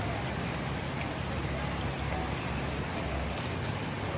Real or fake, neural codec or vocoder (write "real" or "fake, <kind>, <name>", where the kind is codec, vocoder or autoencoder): real